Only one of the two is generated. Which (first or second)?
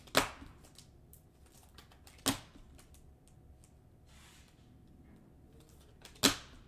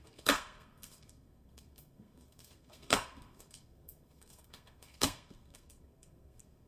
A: second